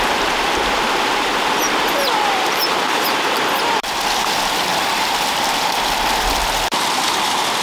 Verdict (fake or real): fake